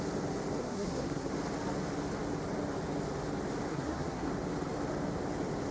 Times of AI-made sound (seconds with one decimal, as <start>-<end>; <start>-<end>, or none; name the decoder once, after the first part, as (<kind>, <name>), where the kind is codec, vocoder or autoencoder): 0.6-1.3 (codec, SNAC); 3.7-4.3